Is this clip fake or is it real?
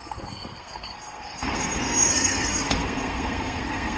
fake